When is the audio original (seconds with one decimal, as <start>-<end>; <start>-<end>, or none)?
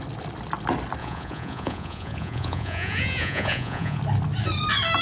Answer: 0.0-1.0; 4.0-5.0